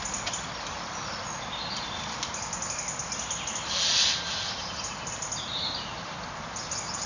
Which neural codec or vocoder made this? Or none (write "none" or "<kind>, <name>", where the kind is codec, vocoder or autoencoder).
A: none